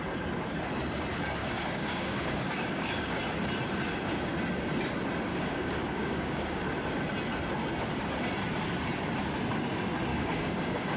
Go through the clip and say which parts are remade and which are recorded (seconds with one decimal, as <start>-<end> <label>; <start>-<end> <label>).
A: 0.0-1.4 recorded; 1.4-3.2 remade; 3.2-5.3 recorded; 5.3-6.6 remade; 6.6-10.1 recorded; 10.1-11.0 remade